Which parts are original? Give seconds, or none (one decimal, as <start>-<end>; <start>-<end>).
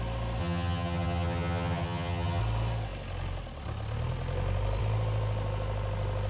0.0-0.4; 2.4-6.3